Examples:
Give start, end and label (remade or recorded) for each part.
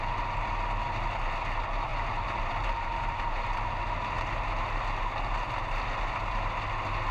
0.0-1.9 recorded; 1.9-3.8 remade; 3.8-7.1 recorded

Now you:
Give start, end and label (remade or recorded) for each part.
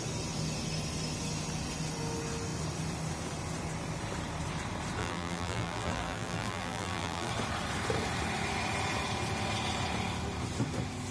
0.0-5.0 recorded; 5.0-7.3 remade; 7.3-11.1 recorded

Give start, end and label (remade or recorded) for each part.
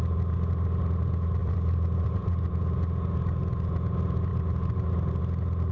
0.0-1.4 recorded; 1.4-2.3 remade; 2.3-5.7 recorded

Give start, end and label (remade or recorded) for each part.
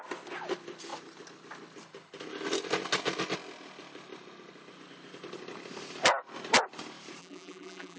0.0-7.2 recorded; 7.2-8.0 remade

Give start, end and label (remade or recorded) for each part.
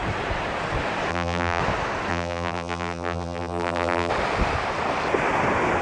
0.0-1.1 recorded; 1.1-1.6 remade; 1.6-2.1 recorded; 2.1-4.1 remade; 4.1-5.8 recorded